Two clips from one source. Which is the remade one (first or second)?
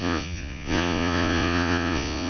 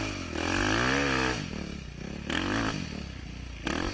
first